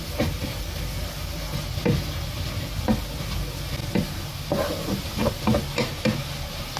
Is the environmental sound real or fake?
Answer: real